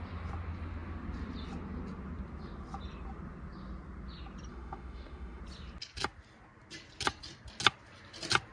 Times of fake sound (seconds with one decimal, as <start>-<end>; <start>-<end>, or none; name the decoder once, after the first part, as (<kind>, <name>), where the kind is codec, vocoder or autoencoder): 4.5-5.4 (autoencoder, DAC-VAE)